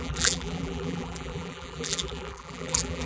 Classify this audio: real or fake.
fake